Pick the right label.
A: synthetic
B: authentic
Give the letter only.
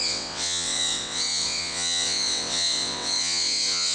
A